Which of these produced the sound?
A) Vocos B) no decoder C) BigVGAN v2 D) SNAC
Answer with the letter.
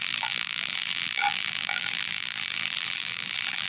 C